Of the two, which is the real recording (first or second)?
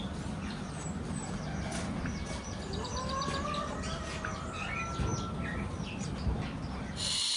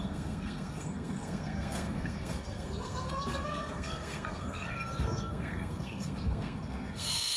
first